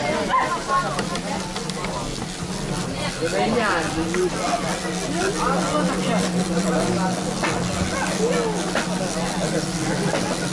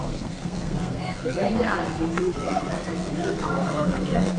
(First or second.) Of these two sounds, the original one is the first